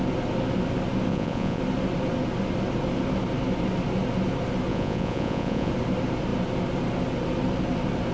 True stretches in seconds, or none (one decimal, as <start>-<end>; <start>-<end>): 0.0-1.1; 1.6-4.7; 5.7-8.1

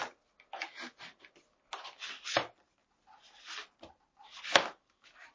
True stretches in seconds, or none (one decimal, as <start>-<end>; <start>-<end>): 0.0-5.3

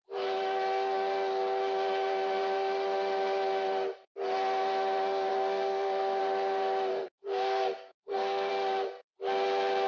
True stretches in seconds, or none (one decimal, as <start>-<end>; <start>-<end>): 0.0-5.3; 6.2-6.9; 8.5-9.9

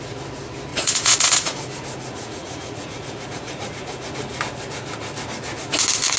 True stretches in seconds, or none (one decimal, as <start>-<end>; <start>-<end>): 0.0-0.7; 4.4-6.2

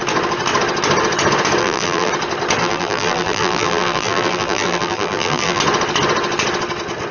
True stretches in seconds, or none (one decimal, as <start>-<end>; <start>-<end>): 0.0-1.6; 2.1-2.6; 5.6-7.1

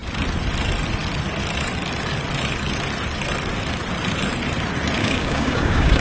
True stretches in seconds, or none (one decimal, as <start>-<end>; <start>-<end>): 0.0-5.0